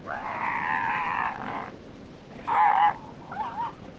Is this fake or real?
fake